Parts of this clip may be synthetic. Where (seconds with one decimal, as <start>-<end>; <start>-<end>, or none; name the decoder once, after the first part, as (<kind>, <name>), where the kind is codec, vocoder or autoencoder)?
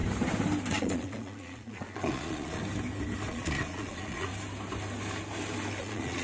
0.7-2.6 (vocoder, Vocos); 3.3-4.3; 5.8-6.2